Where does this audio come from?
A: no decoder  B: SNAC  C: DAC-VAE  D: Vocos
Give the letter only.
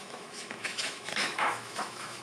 C